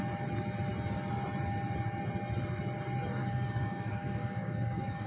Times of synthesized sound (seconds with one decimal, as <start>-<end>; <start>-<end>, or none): 3.2-5.1